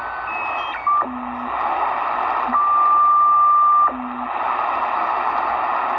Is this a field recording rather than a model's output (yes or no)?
yes